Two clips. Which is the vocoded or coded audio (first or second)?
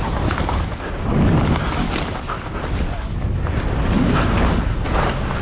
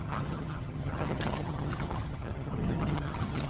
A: second